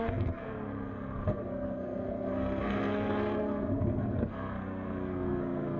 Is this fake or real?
fake